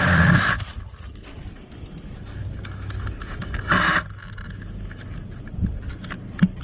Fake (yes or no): no